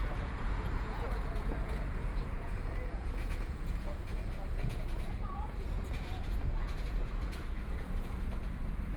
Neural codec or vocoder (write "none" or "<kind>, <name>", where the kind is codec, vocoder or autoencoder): vocoder, Vocos